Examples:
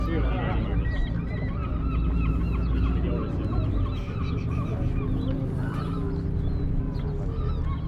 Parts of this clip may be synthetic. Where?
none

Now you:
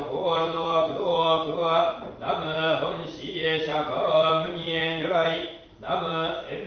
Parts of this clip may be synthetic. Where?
0.0-6.7 (vocoder, Vocos)

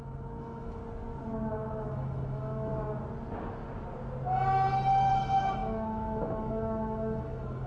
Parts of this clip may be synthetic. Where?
0.0-0.8 (autoencoder, DAC-VAE); 1.5-2.7; 5.1-7.7

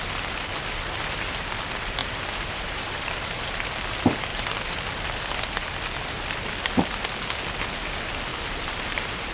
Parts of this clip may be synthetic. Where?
2.0-3.5 (vocoder, BigVGAN v2); 8.3-9.3

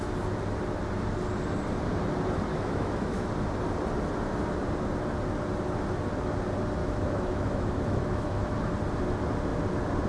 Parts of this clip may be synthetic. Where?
2.5-3.3 (autoencoder, DAC-VAE); 6.8-8.7